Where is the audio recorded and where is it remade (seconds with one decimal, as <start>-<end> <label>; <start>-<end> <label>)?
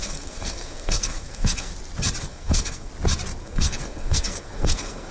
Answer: 0.0-1.7 remade; 1.7-2.2 recorded; 2.2-2.9 remade; 2.9-3.4 recorded; 3.4-5.1 remade